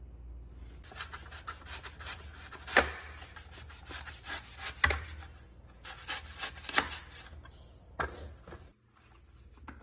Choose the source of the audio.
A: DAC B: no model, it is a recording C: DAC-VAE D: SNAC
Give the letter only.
B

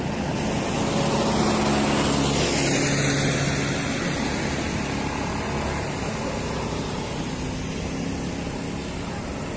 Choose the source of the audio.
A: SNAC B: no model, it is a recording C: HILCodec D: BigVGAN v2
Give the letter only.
B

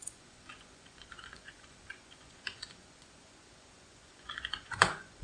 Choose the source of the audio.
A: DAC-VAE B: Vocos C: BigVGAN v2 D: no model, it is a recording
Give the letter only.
B